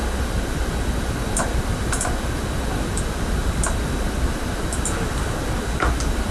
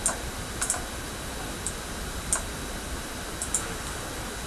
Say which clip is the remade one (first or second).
first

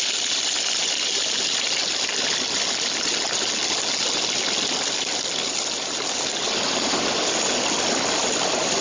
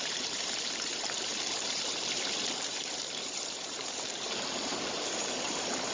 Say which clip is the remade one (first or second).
second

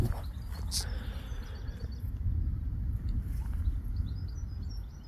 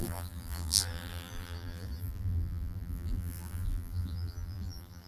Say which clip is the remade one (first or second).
second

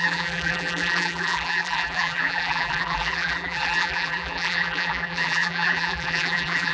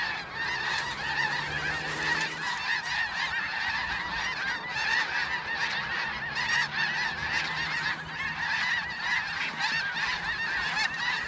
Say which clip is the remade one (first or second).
first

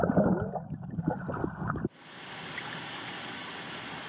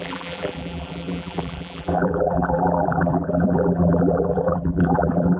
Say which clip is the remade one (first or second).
second